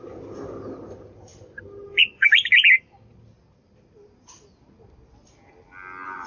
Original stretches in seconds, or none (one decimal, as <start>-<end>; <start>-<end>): 0.0-6.3